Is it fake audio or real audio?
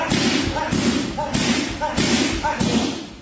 real